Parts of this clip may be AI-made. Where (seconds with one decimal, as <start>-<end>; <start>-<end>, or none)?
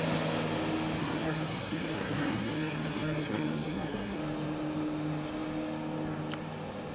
1.0-4.2